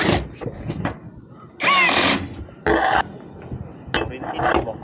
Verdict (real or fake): real